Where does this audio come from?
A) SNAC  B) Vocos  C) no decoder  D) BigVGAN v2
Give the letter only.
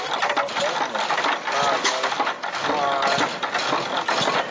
C